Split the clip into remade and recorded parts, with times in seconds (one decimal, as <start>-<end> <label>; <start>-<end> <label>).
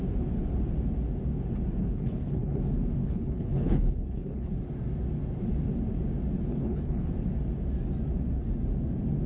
0.0-1.8 recorded; 1.8-2.6 remade; 2.6-3.0 recorded; 3.0-4.5 remade; 4.5-6.5 recorded; 6.5-7.1 remade; 7.1-9.3 recorded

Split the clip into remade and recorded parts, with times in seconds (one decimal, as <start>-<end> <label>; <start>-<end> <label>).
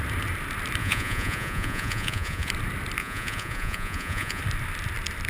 0.0-0.8 recorded; 0.8-2.5 remade; 2.5-3.0 recorded; 3.0-4.4 remade; 4.4-5.3 recorded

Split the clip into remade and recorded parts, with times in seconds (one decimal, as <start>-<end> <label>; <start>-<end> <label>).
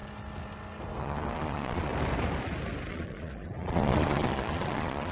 0.0-1.0 recorded; 1.0-1.9 remade; 1.9-2.9 recorded; 2.9-5.1 remade